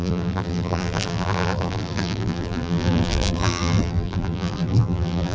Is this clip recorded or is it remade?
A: remade